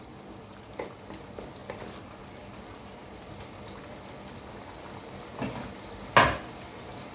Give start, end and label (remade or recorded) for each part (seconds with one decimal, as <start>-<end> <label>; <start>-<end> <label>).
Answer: 0.0-7.1 recorded